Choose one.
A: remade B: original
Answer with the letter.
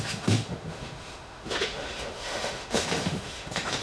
A